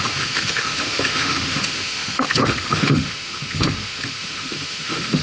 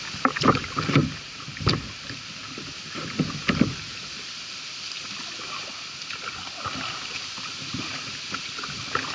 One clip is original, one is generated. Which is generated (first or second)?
first